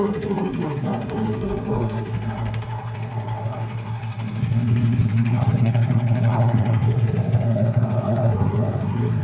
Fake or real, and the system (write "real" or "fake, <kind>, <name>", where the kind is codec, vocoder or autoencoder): fake, codec, SNAC